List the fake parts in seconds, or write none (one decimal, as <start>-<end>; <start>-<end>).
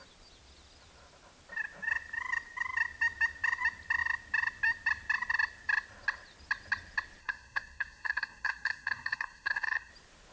7.2-9.9